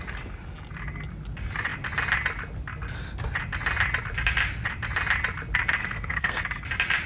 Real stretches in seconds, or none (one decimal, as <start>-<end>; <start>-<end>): 0.0-5.8; 6.4-7.1